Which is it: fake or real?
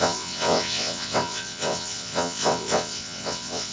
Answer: fake